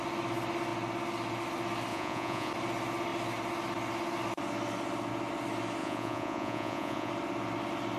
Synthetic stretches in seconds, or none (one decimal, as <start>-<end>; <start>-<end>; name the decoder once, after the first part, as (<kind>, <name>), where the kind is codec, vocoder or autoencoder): 1.9-2.5 (vocoder, Vocos); 5.8-7.1